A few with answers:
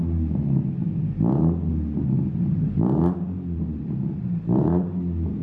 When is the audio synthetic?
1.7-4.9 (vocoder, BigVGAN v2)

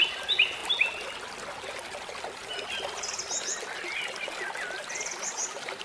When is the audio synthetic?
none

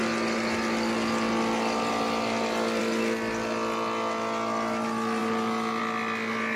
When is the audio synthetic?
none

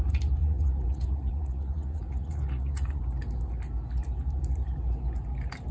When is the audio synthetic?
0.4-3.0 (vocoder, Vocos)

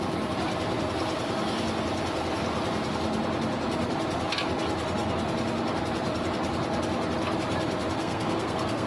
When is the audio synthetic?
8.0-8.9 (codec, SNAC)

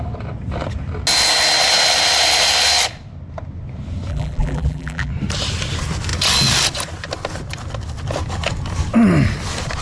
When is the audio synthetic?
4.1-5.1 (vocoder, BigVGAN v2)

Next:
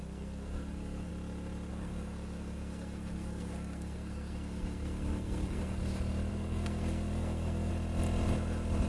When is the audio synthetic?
0.0-1.1 (codec, SNAC); 1.7-5.8; 6.3-7.7